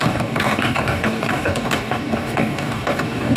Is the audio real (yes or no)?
no